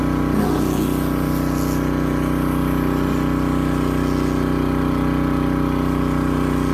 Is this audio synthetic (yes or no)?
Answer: no